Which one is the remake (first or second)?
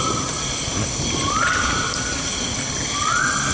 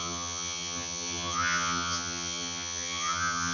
second